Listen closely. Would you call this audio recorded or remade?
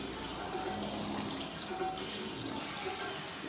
recorded